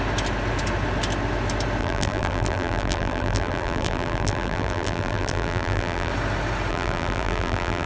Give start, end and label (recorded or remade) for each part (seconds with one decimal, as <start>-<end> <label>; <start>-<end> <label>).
0.0-1.8 recorded; 1.8-6.1 remade; 6.1-6.7 recorded; 6.7-7.9 remade